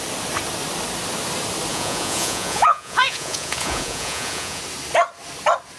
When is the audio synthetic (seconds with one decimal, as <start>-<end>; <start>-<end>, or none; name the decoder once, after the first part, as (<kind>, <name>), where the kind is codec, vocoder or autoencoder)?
1.7-4.6 (vocoder, Vocos)